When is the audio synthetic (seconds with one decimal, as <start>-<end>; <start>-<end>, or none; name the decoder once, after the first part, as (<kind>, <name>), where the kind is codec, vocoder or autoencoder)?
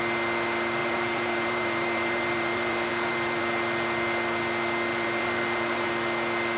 0.8-3.4 (vocoder, BigVGAN v2); 4.9-5.9